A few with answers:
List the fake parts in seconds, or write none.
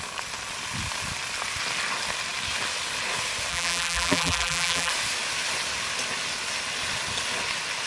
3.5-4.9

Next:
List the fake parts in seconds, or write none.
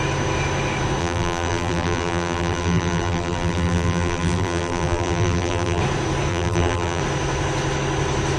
1.0-5.8; 6.3-7.0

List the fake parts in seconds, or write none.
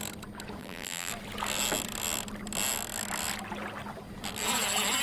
0.6-1.1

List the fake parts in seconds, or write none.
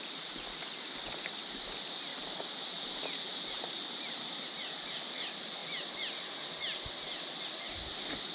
2.1-4.9